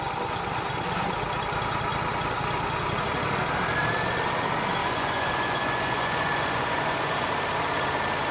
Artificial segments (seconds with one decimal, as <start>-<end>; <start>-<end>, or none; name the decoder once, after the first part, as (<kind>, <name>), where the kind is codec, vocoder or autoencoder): 4.8-7.3 (vocoder, Vocos)